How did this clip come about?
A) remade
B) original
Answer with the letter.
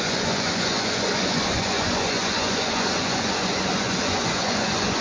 A